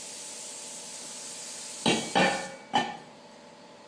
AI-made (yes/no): no